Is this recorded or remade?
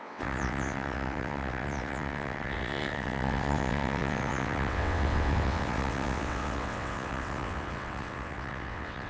remade